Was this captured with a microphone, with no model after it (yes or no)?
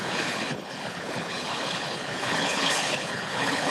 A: no